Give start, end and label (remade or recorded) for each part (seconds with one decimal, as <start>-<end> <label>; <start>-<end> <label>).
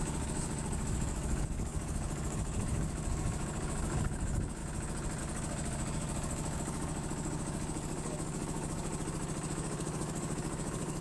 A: 0.0-4.6 remade; 4.6-5.2 recorded; 5.2-8.9 remade; 8.9-9.5 recorded; 9.5-11.0 remade